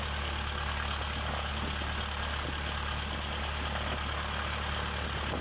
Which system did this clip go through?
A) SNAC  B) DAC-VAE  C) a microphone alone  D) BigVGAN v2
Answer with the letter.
C